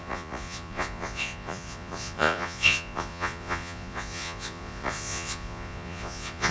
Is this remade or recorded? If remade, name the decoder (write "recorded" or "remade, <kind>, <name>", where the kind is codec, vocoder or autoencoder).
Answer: remade, vocoder, Vocos